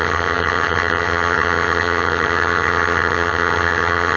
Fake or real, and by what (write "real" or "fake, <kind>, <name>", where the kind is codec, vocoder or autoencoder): fake, vocoder, HiFi-GAN